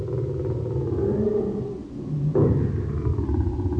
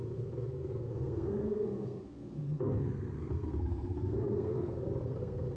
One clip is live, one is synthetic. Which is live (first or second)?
first